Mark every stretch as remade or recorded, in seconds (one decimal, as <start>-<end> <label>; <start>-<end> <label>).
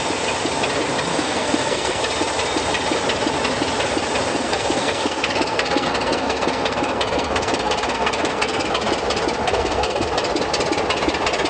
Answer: 0.0-1.1 recorded; 1.1-2.0 remade; 2.0-4.3 recorded; 4.3-8.7 remade; 8.7-9.4 recorded; 9.4-10.1 remade; 10.1-11.5 recorded